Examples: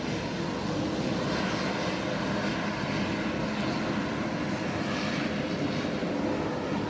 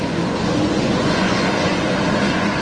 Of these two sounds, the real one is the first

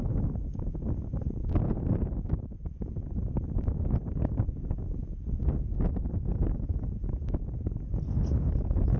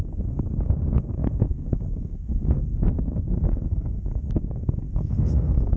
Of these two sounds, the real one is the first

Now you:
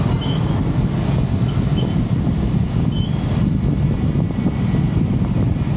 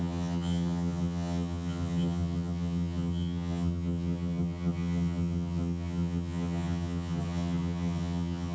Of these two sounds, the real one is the first